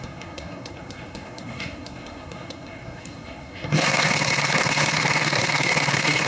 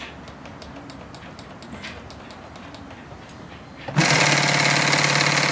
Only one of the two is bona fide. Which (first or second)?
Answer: second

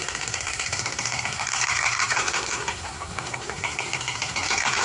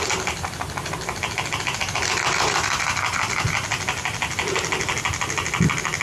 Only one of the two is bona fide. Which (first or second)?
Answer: second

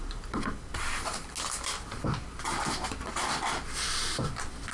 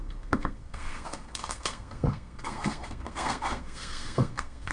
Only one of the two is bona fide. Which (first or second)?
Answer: first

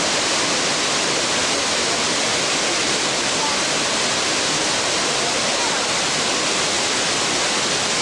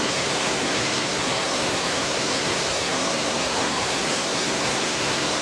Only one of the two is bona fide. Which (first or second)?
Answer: first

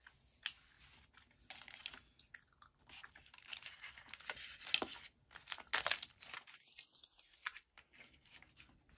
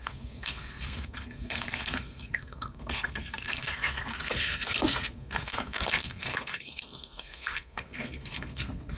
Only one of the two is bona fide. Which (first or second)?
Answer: first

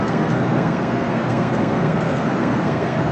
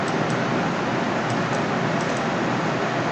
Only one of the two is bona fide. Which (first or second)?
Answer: second